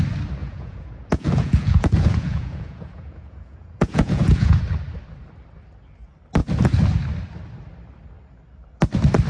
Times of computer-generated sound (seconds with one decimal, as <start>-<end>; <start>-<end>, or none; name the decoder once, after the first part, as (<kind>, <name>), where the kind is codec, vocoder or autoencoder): 0.4-4.6 (vocoder, Vocos)